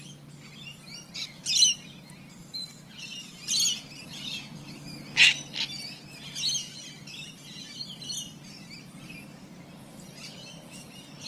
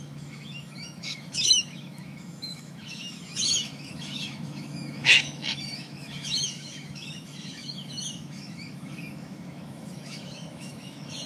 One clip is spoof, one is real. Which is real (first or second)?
first